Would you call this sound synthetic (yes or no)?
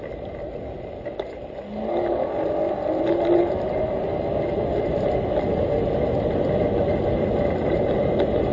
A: no